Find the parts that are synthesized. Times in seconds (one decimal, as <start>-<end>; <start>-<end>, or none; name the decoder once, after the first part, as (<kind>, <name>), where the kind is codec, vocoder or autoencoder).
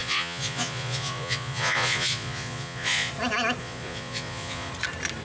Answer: 0.0-3.1 (vocoder, Vocos); 3.6-4.7